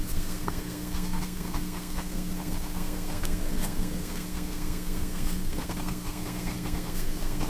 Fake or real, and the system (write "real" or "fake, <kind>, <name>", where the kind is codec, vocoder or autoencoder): fake, codec, SNAC